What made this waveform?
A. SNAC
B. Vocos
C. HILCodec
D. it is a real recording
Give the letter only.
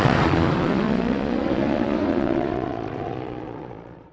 B